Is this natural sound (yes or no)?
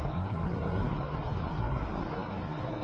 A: no